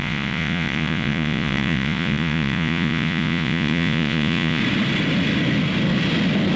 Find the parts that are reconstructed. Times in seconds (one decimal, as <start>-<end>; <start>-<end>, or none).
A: 0.0-4.6